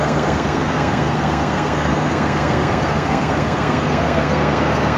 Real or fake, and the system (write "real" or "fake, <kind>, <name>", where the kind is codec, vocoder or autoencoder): fake, codec, SNAC